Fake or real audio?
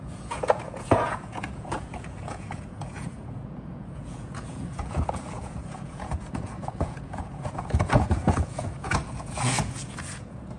fake